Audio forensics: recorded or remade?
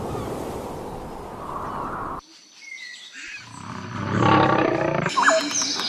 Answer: recorded